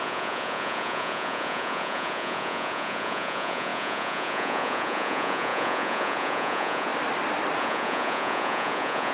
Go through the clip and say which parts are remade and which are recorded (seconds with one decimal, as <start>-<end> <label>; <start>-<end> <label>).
0.0-6.9 remade; 6.9-7.6 recorded; 7.6-9.1 remade